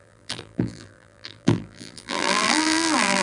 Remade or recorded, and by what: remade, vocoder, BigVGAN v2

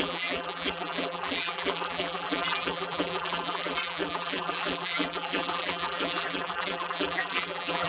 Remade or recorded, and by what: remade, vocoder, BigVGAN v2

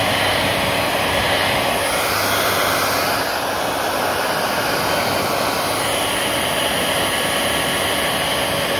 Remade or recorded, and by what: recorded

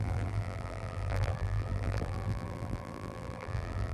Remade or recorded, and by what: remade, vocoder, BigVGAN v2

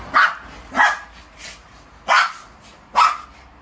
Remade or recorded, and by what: recorded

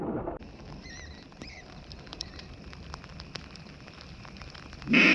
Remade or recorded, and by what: remade, vocoder, BigVGAN v2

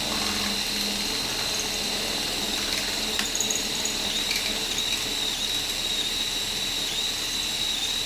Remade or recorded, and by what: recorded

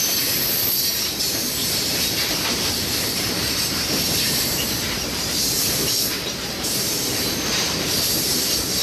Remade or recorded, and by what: remade, vocoder, BigVGAN v2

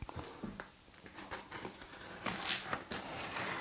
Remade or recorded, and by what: remade, vocoder, BigVGAN v2